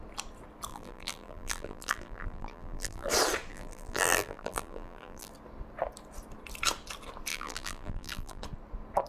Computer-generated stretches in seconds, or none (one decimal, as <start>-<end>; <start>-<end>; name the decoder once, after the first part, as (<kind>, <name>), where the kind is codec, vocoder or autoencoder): 0.7-3.1 (vocoder, BigVGAN v2); 3.5-5.3; 7.3-8.4